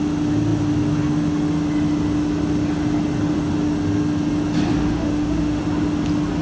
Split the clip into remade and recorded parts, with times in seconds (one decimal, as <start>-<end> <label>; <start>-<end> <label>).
0.0-4.8 recorded; 4.8-5.6 remade; 5.6-6.4 recorded